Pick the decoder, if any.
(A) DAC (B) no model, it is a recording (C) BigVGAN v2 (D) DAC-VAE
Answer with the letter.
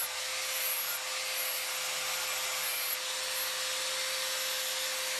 B